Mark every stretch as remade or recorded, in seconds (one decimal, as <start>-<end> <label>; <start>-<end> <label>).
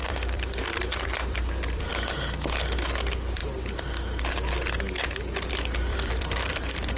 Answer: 0.0-1.9 remade; 1.9-5.9 recorded; 5.9-7.0 remade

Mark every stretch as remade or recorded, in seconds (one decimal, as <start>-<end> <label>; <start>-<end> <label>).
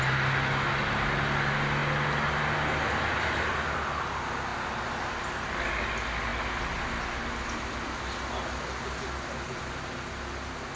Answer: 0.0-10.8 recorded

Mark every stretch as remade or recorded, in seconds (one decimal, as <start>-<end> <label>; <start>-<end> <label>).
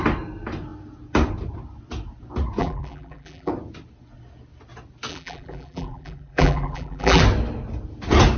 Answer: 0.0-2.6 recorded; 2.6-3.5 remade; 3.5-5.1 recorded; 5.1-7.2 remade; 7.2-8.4 recorded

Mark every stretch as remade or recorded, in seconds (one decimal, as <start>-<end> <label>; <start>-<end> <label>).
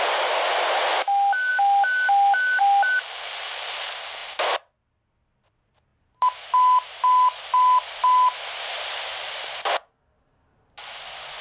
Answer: 0.0-11.4 recorded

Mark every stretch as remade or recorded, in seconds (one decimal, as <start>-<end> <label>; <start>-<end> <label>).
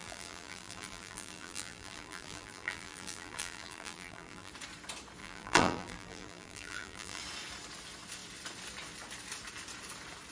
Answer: 0.0-4.5 remade; 4.5-5.2 recorded; 5.2-7.2 remade; 7.2-10.3 recorded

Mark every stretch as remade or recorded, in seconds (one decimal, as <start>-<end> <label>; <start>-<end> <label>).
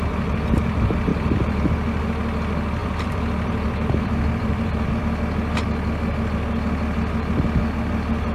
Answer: 0.0-1.1 recorded; 1.1-1.7 remade; 1.7-2.8 recorded; 2.8-5.0 remade; 5.0-8.3 recorded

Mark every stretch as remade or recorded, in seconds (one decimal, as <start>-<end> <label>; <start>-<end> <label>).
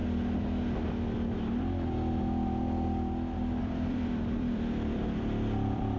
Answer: 0.0-3.6 recorded; 3.6-6.0 remade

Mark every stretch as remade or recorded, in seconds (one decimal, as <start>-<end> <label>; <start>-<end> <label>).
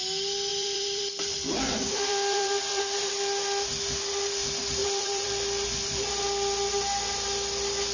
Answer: 0.0-0.5 recorded; 0.5-3.1 remade; 3.1-4.8 recorded; 4.8-6.1 remade; 6.1-7.9 recorded